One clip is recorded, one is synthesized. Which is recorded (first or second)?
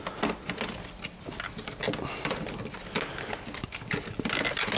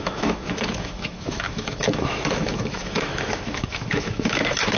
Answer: first